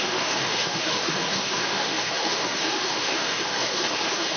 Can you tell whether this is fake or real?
fake